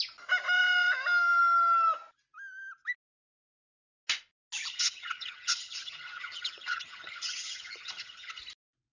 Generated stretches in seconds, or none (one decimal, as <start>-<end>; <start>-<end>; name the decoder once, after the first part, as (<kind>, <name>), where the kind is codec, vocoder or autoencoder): 4.7-8.4 (vocoder, HiFi-GAN)